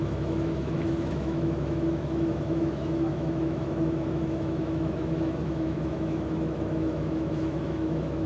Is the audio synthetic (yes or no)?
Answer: yes